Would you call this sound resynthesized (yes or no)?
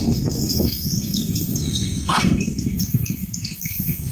yes